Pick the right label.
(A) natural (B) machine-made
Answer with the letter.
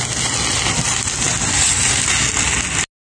A